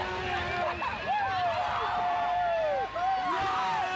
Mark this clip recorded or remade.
recorded